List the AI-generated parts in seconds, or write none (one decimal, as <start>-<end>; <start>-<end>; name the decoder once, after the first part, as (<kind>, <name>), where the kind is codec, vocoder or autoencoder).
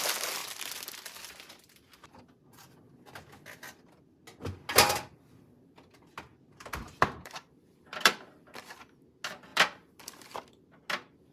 0.4-2.2 (vocoder, BigVGAN v2); 6.3-9.0; 9.5-10.5